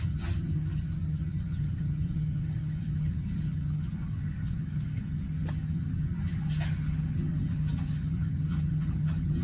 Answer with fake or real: fake